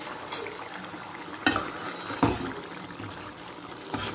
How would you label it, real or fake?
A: real